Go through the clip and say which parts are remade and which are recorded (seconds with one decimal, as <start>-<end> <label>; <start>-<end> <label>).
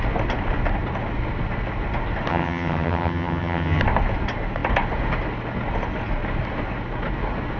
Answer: 0.0-2.3 recorded; 2.3-3.8 remade; 3.8-7.6 recorded